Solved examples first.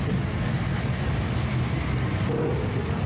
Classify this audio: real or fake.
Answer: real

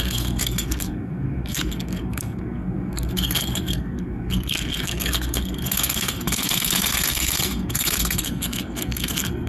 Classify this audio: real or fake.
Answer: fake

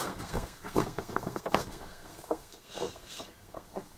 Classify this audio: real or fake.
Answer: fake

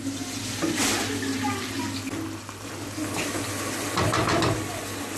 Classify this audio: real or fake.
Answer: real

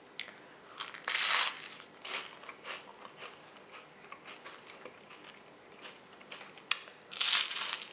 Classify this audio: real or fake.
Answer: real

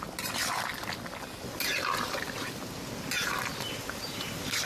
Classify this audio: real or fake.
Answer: real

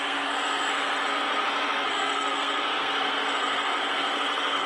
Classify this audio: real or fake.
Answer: fake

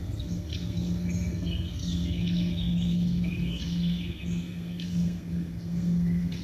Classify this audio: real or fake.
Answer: fake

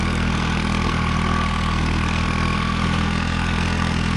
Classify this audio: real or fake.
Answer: fake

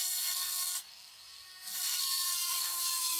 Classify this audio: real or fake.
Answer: fake